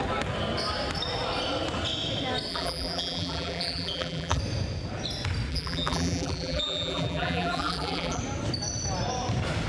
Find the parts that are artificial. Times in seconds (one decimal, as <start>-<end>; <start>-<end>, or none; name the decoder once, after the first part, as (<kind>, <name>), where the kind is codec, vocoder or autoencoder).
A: 2.5-4.4 (vocoder, BigVGAN v2); 5.5-8.2